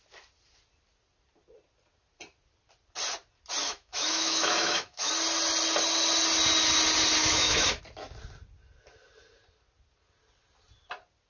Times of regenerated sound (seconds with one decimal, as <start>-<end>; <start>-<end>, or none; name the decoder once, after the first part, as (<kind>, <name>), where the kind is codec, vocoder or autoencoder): 3.6-5.1 (autoencoder, DAC-VAE); 7.2-7.8